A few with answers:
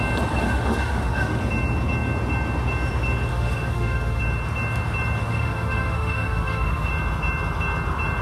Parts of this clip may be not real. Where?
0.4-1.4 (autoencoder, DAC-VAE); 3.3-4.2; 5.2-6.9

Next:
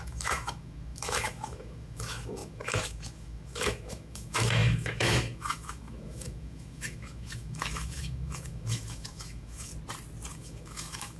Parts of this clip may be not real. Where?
0.0-9.7 (autoencoder, DAC-VAE); 10.3-11.2

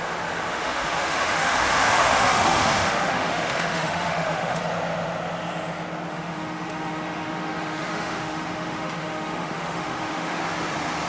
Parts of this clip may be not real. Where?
0.5-4.6 (autoencoder, DAC-VAE); 6.1-10.4